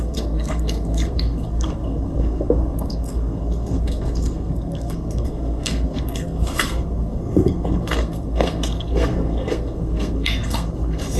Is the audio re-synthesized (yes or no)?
yes